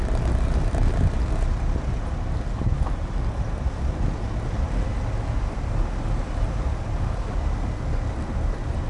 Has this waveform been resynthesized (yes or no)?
no